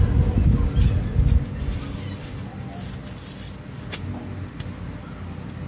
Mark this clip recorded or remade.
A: recorded